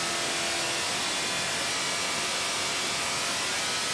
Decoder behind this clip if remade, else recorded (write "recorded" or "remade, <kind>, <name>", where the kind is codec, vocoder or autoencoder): recorded